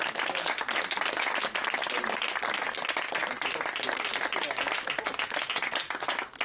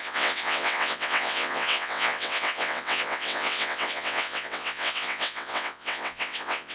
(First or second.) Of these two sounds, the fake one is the second